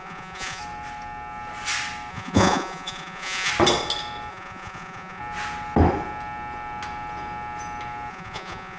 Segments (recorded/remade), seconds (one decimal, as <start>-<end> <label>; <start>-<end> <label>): 0.0-0.6 remade; 0.6-2.1 recorded; 2.1-3.5 remade; 3.5-4.3 recorded; 4.3-5.2 remade; 5.2-8.1 recorded; 8.1-8.8 remade